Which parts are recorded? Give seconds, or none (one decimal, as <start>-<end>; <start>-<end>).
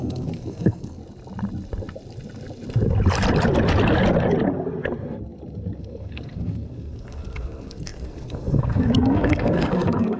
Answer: 1.0-5.8